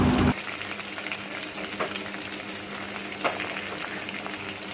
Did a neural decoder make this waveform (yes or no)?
no